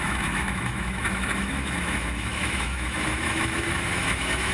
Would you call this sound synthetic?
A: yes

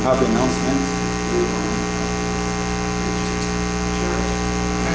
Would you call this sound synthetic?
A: no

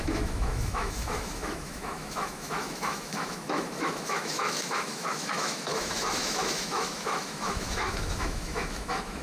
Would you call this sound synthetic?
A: yes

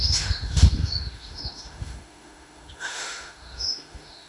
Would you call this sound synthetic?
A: yes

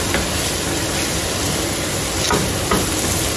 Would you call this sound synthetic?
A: no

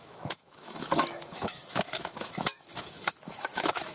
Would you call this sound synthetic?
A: yes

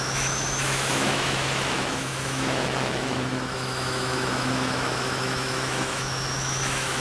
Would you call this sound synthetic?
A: yes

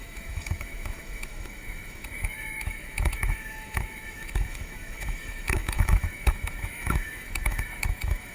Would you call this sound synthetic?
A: yes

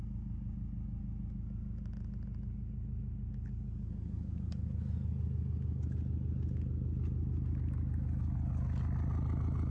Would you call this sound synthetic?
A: no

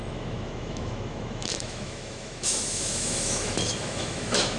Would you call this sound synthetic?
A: yes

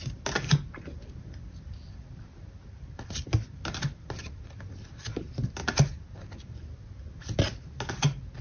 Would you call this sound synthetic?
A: no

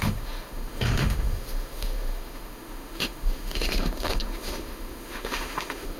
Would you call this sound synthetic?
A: yes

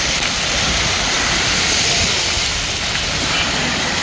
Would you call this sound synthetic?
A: no